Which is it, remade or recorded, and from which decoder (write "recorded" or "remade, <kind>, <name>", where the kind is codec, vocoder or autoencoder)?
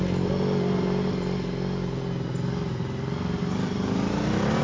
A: recorded